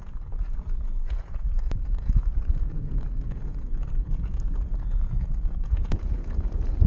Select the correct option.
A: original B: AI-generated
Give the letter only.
B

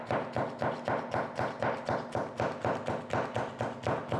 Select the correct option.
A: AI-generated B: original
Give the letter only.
B